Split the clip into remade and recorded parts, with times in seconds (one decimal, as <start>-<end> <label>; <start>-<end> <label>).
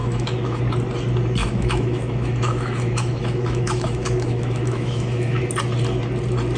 0.0-0.6 remade; 0.6-1.4 recorded; 1.4-5.4 remade; 5.4-6.6 recorded